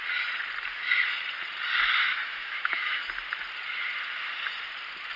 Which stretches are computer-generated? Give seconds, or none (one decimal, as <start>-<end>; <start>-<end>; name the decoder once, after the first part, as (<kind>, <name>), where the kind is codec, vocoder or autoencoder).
2.1-3.0 (autoencoder, DAC-VAE)